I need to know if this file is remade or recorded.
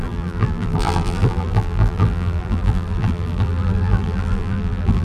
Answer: remade